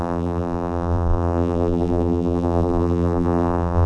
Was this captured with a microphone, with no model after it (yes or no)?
no